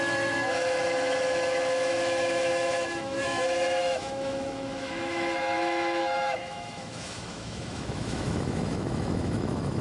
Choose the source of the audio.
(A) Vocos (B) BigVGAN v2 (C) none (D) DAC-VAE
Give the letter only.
D